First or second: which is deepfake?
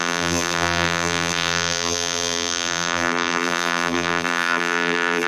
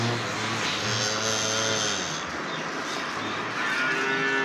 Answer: first